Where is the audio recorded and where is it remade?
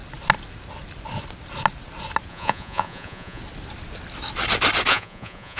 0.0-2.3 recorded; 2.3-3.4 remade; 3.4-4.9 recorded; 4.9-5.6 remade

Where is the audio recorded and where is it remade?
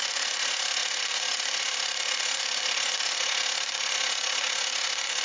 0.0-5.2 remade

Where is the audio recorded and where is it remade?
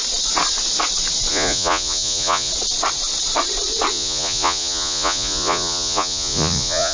0.0-1.3 recorded; 1.3-2.5 remade; 2.5-3.9 recorded; 3.9-6.9 remade